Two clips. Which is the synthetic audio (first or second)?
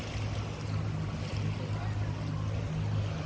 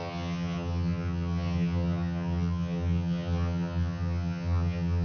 second